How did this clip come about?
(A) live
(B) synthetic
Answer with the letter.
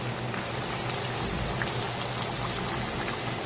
A